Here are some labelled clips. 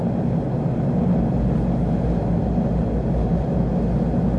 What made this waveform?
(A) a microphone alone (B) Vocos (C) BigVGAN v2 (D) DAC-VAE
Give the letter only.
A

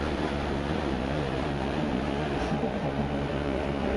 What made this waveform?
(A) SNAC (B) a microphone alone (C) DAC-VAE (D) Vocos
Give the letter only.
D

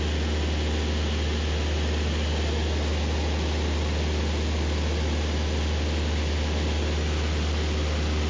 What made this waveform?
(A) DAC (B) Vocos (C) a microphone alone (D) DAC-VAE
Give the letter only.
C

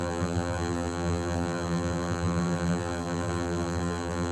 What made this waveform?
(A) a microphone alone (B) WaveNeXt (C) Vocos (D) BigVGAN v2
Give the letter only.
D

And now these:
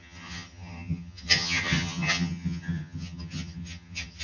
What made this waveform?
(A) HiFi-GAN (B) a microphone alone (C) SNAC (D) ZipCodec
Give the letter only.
A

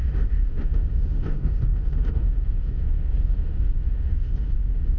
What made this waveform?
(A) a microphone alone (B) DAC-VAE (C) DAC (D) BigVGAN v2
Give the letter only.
B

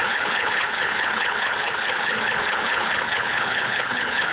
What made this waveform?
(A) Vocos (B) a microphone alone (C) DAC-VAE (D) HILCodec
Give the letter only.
D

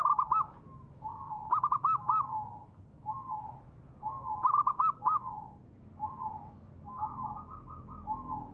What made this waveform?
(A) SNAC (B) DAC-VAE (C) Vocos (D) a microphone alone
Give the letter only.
B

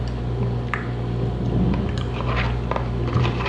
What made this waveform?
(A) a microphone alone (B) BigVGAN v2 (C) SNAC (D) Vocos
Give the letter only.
A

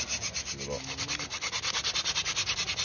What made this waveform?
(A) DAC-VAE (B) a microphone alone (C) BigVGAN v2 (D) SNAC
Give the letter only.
B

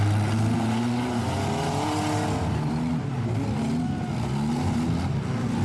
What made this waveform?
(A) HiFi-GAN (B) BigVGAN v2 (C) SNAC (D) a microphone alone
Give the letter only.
D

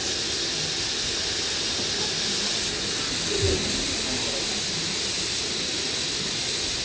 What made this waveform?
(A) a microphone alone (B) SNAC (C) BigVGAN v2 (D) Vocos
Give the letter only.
A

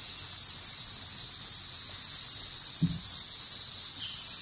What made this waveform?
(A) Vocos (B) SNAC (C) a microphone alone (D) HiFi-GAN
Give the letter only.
C